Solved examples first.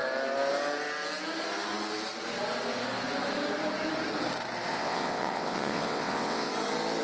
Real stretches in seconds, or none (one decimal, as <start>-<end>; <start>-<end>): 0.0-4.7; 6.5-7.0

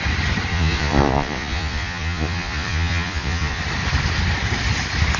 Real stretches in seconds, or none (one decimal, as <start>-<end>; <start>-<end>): 0.0-0.5; 3.6-5.2

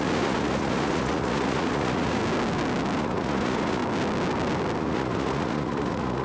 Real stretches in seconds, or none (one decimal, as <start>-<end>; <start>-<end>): 2.2-3.0; 3.8-4.8

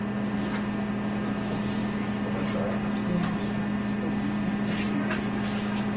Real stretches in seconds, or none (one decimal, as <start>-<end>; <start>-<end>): 0.0-6.0

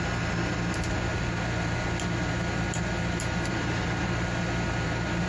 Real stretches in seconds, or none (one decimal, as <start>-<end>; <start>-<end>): 0.0-5.3

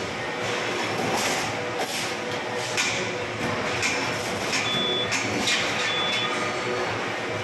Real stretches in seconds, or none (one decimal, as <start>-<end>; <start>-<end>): 0.0-7.4